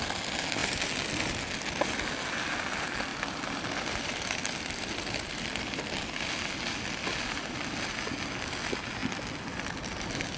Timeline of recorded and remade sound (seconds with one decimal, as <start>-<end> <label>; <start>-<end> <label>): 0.0-0.6 recorded; 0.6-1.8 remade; 1.8-3.1 recorded; 3.1-5.8 remade; 5.8-10.4 recorded

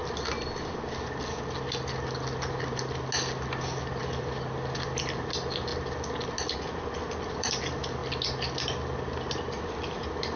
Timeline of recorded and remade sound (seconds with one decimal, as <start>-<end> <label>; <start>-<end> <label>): 0.0-4.0 recorded; 4.0-5.7 remade; 5.7-7.2 recorded; 7.2-8.0 remade; 8.0-9.6 recorded; 9.6-10.4 remade